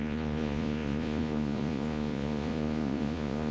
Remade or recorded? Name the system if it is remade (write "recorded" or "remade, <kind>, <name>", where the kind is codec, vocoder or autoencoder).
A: remade, vocoder, Vocos